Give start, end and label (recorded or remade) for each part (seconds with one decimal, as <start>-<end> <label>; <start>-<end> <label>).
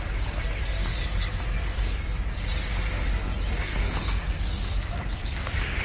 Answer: 0.0-0.9 recorded; 0.9-2.0 remade; 2.0-3.7 recorded; 3.7-5.8 remade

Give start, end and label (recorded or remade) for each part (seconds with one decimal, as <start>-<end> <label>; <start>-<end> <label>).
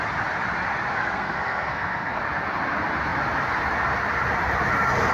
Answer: 0.0-0.9 recorded; 0.9-2.2 remade; 2.2-5.1 recorded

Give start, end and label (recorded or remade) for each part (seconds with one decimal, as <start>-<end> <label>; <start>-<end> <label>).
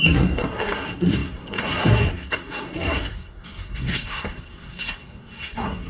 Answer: 0.0-5.9 remade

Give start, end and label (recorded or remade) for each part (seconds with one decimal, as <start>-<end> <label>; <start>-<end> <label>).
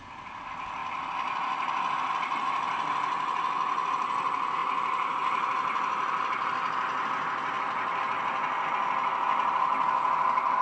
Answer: 0.0-10.6 recorded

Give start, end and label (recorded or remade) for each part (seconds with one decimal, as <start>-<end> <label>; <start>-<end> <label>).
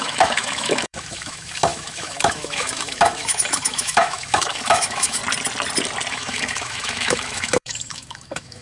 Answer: 0.0-5.2 remade; 5.2-6.1 recorded; 6.1-8.6 remade